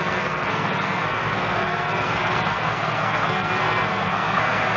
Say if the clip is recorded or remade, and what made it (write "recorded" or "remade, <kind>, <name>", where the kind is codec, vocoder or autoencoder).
remade, codec, SNAC